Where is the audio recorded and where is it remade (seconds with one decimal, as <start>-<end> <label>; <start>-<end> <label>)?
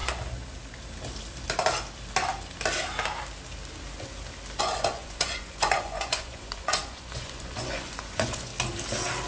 0.0-4.6 recorded; 4.6-8.5 remade; 8.5-9.3 recorded